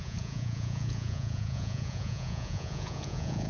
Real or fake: fake